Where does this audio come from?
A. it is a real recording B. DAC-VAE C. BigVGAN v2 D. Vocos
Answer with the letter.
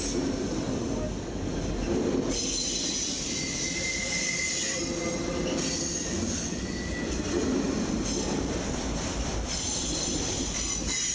A